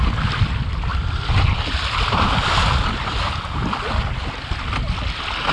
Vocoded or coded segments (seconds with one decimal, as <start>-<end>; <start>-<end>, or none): none